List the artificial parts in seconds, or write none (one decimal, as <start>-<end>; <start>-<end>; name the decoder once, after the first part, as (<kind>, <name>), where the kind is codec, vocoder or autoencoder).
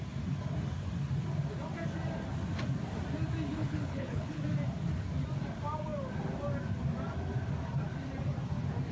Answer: 3.6-4.4 (codec, HILCodec)